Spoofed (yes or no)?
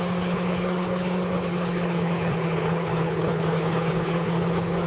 yes